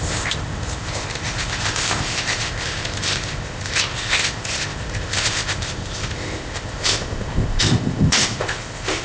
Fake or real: fake